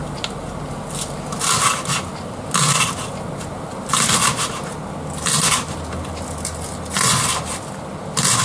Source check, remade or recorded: recorded